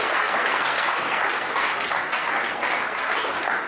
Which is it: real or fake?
fake